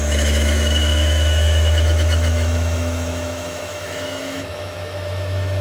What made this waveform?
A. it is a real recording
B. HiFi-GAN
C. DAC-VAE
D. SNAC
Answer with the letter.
C